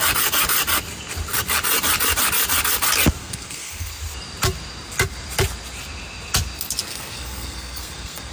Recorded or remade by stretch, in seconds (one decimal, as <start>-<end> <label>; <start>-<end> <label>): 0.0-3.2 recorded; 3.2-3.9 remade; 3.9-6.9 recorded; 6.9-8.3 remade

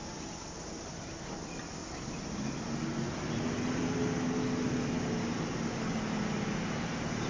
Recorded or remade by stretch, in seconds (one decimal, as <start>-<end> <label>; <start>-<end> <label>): 0.0-7.3 recorded

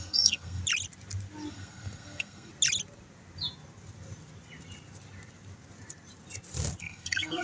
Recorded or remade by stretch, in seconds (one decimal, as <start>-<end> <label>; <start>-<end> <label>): 0.0-0.6 remade; 0.6-1.5 recorded; 1.5-2.5 remade; 2.5-6.8 recorded; 6.8-7.4 remade

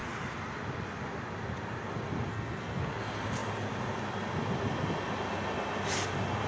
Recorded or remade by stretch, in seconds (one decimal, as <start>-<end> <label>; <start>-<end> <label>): 0.0-2.3 recorded; 2.3-2.8 remade; 2.8-6.5 recorded

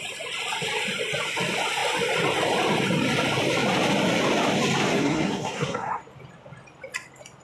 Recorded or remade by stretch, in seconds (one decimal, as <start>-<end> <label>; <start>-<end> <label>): 0.0-4.9 recorded; 4.9-6.0 remade; 6.0-7.4 recorded

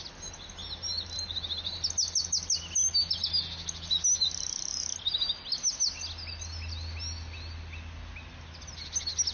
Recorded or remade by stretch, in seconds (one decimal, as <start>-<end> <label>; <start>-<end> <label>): 0.0-9.3 recorded

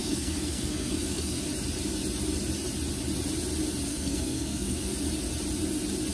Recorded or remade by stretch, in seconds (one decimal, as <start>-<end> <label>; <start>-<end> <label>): 0.0-1.4 remade; 1.4-3.9 recorded; 3.9-4.9 remade; 4.9-6.1 recorded

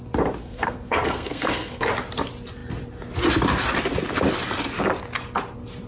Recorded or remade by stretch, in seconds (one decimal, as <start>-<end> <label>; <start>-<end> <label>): 0.0-0.4 recorded; 0.4-1.9 remade; 1.9-5.9 recorded